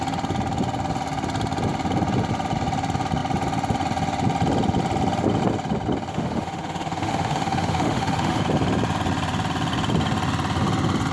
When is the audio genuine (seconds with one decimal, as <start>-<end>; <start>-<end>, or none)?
0.0-6.1; 8.4-11.1